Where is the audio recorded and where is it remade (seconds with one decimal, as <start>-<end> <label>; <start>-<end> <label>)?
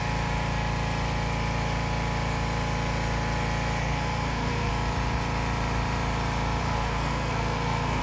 0.0-3.8 recorded; 3.8-4.7 remade; 4.7-6.6 recorded; 6.6-8.0 remade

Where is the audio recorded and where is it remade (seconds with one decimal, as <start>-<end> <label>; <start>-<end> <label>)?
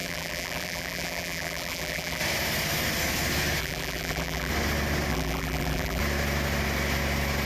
0.0-2.2 remade; 2.2-3.6 recorded; 3.6-4.5 remade; 4.5-5.1 recorded; 5.1-6.0 remade; 6.0-7.5 recorded